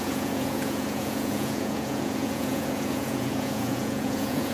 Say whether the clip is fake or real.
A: fake